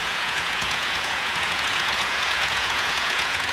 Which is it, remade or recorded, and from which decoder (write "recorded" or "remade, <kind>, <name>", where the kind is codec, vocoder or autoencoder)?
remade, vocoder, Vocos